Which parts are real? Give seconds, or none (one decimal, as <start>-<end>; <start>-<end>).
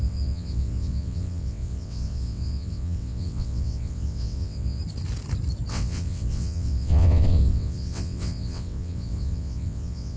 4.8-5.7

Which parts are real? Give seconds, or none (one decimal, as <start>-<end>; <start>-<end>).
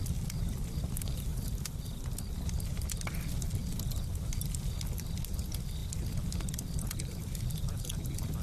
0.0-1.3; 2.0-8.4